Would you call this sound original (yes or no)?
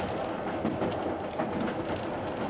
yes